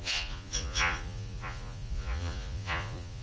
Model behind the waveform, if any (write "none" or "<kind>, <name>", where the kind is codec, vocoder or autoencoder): vocoder, Vocos